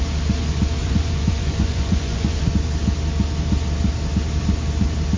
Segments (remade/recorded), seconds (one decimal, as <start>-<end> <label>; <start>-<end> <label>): 0.0-0.8 recorded; 0.8-2.4 remade; 2.4-5.2 recorded